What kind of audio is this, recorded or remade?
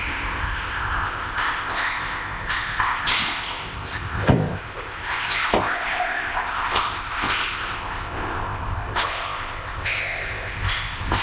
remade